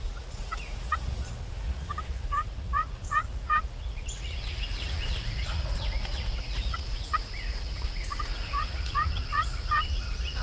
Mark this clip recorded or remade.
remade